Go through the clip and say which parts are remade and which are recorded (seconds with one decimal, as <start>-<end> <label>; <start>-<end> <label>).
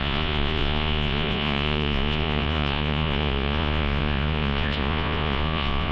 0.0-5.9 remade